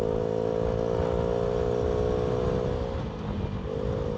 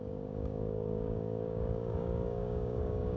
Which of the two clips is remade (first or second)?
second